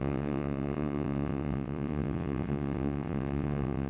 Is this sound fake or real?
fake